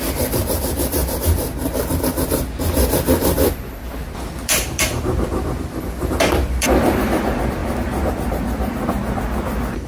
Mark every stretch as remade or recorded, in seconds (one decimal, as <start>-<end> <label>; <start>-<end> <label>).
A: 0.0-1.0 remade; 1.0-3.5 recorded; 3.5-9.0 remade; 9.0-9.9 recorded